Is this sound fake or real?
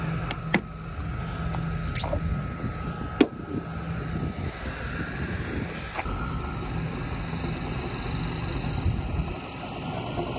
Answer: real